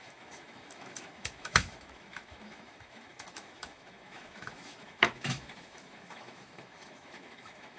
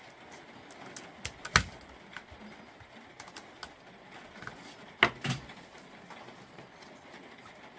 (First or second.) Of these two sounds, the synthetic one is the first